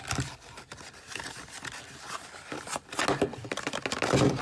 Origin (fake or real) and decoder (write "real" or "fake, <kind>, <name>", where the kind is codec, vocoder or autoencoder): real